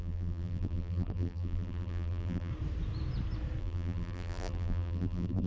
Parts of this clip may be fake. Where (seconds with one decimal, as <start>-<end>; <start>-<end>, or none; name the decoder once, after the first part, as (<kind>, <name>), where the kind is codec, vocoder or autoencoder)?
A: 0.0-2.5 (vocoder, BigVGAN v2); 3.6-5.5